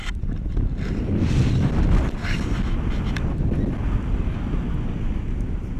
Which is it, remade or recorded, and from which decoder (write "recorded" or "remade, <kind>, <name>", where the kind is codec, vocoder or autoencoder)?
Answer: recorded